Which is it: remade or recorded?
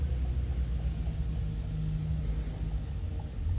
recorded